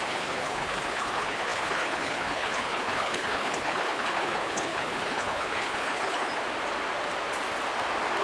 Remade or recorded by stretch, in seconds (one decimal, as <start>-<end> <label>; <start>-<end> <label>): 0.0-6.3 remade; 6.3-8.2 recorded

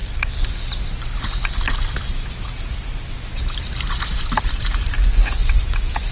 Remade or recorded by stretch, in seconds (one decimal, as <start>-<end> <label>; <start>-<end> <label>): 0.0-6.1 recorded

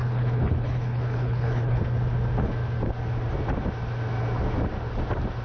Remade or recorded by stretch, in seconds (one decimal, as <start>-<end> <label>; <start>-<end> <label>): 0.0-1.8 remade; 1.8-5.4 recorded

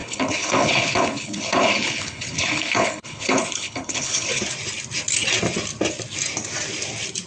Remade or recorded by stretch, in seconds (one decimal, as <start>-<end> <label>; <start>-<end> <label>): 0.0-4.4 remade; 4.4-7.3 recorded